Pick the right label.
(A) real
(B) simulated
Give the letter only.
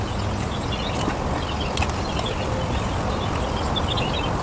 A